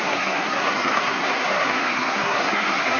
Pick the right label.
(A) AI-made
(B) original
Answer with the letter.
A